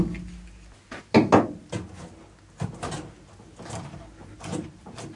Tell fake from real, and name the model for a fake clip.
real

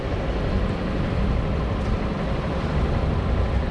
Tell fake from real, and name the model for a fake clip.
fake, vocoder, BigVGAN v2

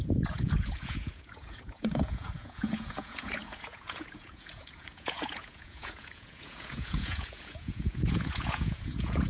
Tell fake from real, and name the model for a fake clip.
fake, vocoder, Vocos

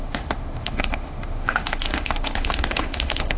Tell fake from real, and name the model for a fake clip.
fake, autoencoder, DAC-VAE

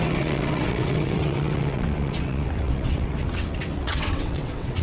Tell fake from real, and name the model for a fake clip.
fake, vocoder, WaveNeXt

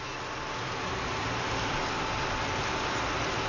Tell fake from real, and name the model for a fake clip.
real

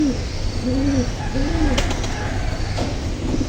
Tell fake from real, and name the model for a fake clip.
real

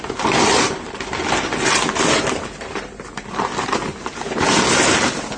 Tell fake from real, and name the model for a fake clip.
real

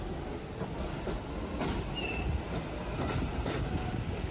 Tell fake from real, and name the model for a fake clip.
real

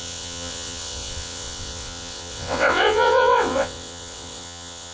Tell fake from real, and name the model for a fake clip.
fake, vocoder, WaveNeXt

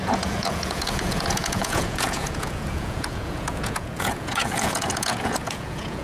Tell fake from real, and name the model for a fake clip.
fake, vocoder, Vocos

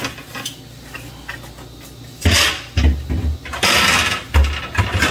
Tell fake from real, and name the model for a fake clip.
real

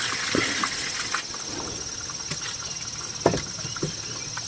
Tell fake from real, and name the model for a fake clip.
real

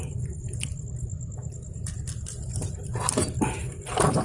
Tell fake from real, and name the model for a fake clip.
real